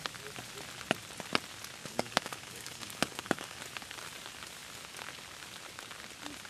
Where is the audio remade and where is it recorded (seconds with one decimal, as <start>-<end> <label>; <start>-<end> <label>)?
0.0-1.8 recorded; 1.8-3.6 remade; 3.6-6.5 recorded